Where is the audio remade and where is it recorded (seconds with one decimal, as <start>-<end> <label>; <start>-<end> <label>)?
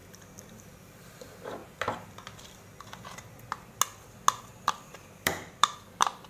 0.0-0.6 recorded; 0.6-1.6 remade; 1.6-4.4 recorded; 4.4-6.3 remade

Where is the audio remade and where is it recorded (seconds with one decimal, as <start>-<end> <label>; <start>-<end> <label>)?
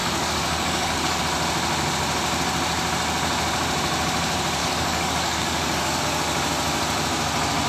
0.0-1.2 remade; 1.2-4.6 recorded; 4.6-6.0 remade; 6.0-7.7 recorded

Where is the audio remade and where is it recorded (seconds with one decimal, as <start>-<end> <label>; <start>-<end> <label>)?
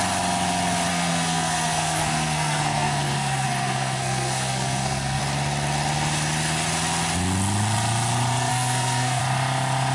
0.0-0.9 recorded; 0.9-5.2 remade; 5.2-8.5 recorded; 8.5-9.2 remade; 9.2-9.9 recorded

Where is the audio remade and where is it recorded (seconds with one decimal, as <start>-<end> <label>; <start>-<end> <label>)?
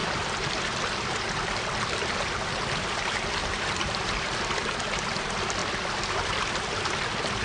0.0-2.5 remade; 2.5-3.4 recorded; 3.4-4.4 remade; 4.4-5.6 recorded; 5.6-6.5 remade; 6.5-7.4 recorded